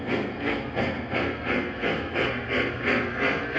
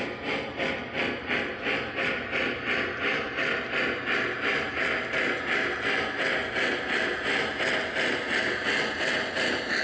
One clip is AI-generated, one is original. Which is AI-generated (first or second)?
first